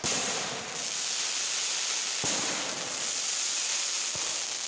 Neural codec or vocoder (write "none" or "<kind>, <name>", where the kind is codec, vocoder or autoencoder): none